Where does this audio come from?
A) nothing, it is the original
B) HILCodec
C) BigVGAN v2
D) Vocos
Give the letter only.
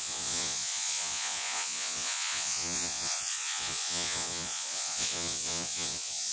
D